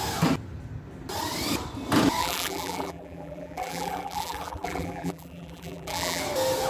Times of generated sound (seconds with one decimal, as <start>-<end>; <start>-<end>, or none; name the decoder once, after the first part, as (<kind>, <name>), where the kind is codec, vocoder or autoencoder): 2.2-6.2 (vocoder, BigVGAN v2)